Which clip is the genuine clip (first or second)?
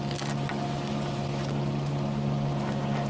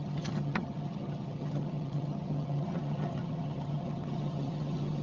first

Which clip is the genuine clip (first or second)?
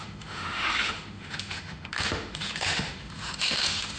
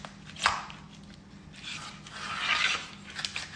second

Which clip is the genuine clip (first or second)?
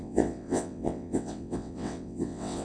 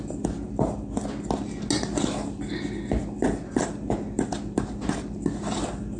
second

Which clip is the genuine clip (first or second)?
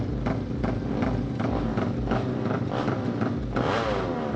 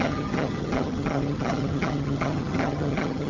first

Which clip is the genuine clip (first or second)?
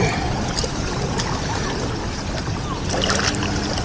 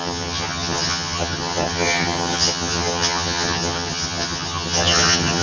first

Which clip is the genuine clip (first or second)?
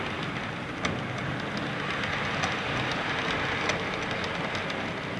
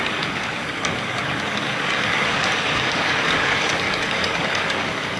first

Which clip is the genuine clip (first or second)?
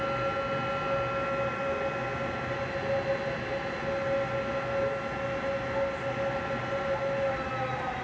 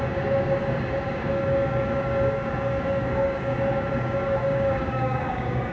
first